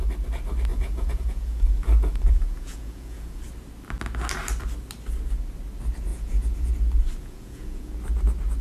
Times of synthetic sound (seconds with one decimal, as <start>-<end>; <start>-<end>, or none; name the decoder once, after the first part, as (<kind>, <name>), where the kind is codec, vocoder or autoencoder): 0.7-3.4 (vocoder, Vocos); 6.1-6.7; 7.2-7.9